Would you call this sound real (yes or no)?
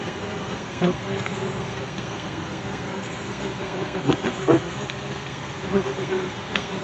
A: no